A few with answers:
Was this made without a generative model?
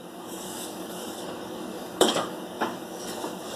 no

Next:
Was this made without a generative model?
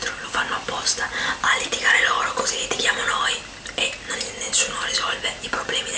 yes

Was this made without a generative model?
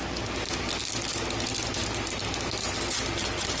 yes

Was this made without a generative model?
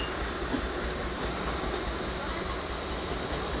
yes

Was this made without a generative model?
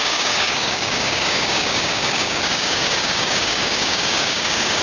no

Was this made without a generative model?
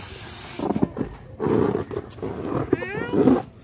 yes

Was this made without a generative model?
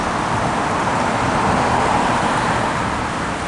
yes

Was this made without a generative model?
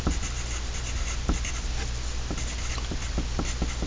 yes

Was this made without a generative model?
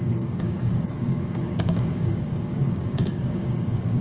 no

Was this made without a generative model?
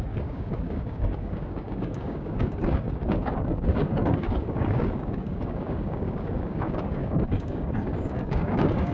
no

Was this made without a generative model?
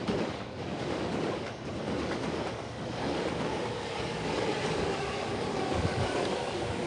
no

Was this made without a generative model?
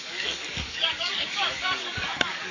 no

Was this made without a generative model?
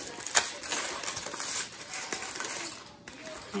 yes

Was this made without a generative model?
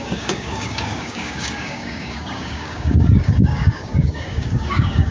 no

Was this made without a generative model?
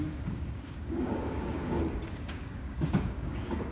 no